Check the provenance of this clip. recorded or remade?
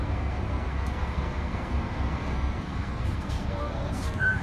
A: remade